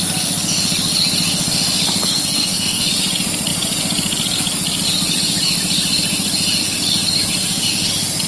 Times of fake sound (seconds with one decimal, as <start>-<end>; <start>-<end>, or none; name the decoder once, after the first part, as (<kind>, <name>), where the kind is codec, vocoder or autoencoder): 2.0-2.9 (codec, SNAC)